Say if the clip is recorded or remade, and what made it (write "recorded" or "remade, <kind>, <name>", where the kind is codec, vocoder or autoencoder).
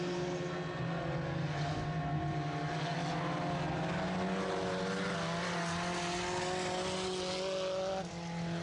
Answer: recorded